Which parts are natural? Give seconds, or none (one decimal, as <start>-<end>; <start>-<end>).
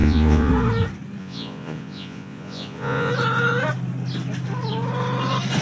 0.5-1.2; 3.1-5.6